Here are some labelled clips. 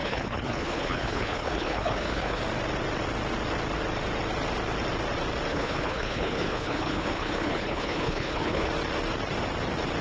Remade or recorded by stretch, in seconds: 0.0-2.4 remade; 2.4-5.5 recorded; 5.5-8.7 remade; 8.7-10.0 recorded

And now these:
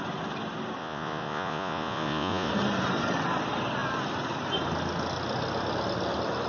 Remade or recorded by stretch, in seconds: 0.0-0.8 recorded; 0.8-2.5 remade; 2.5-6.5 recorded

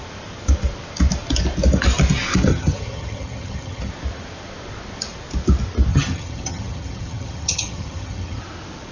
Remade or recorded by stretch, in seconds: 0.0-2.5 recorded; 2.5-3.9 remade; 3.9-5.9 recorded; 5.9-8.4 remade; 8.4-8.9 recorded

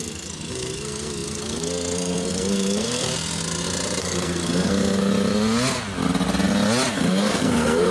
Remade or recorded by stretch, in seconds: 0.0-3.1 remade; 3.1-4.0 recorded; 4.0-5.1 remade; 5.1-6.9 recorded; 6.9-7.9 remade